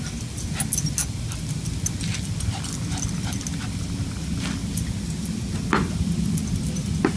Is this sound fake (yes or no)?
no